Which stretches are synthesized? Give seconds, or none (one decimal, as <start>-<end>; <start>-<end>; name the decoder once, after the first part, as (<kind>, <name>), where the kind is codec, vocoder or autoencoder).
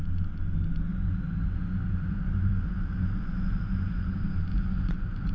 0.9-4.1 (vocoder, Vocos); 4.5-5.3